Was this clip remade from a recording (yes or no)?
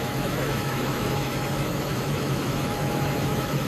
yes